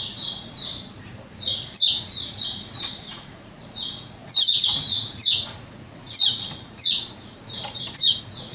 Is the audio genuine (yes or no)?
no